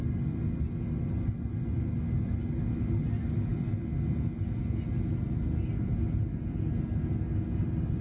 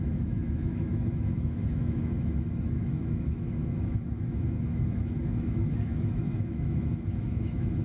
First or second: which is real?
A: first